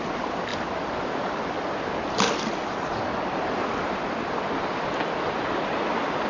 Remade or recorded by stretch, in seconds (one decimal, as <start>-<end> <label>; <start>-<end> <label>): 0.0-6.3 recorded